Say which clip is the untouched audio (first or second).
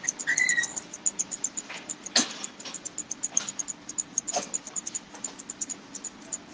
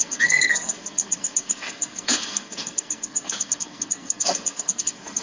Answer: first